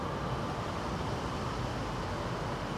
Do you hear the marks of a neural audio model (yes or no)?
no